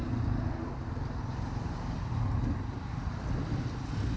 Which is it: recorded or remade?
recorded